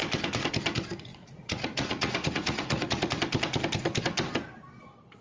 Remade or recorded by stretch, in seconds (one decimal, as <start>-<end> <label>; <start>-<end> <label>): 0.0-1.1 recorded; 1.1-3.1 remade; 3.1-5.2 recorded